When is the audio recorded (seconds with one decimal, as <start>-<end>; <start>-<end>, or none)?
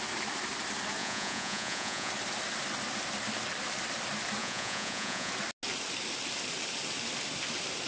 0.0-1.0; 2.1-4.4; 5.3-7.9